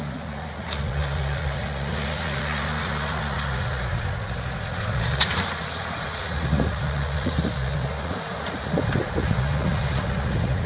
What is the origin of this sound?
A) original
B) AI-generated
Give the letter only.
B